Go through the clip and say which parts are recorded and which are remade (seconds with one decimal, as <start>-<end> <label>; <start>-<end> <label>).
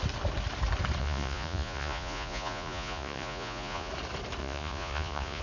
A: 0.0-1.0 recorded; 1.0-3.9 remade; 3.9-4.4 recorded; 4.4-5.4 remade